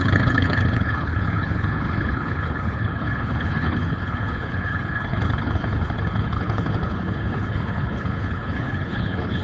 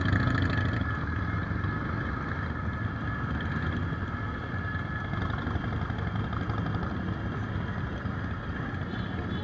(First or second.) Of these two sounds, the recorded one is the second